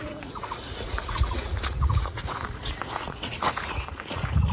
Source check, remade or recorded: remade